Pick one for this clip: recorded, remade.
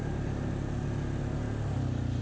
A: recorded